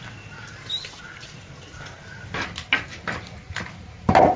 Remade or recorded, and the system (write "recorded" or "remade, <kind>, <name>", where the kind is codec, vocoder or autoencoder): recorded